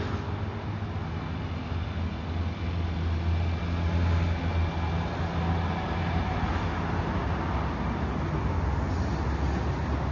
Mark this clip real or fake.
real